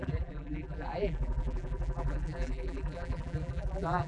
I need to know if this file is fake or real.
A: fake